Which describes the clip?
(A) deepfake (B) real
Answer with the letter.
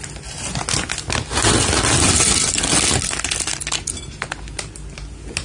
B